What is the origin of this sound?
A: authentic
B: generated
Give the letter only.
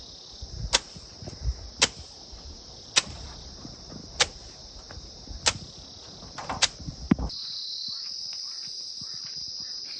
A